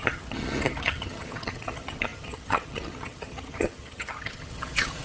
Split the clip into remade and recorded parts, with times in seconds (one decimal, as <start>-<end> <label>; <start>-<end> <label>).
0.0-5.0 remade